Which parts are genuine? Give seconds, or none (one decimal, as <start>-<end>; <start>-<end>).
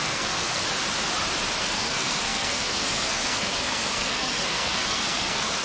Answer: 0.6-1.6